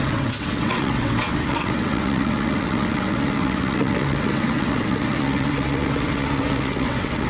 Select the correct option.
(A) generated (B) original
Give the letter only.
A